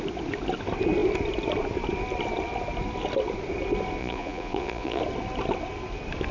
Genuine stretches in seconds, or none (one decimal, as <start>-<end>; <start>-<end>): 0.0-4.0; 5.0-6.3